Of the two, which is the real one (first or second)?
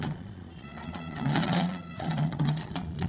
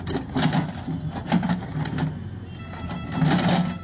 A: second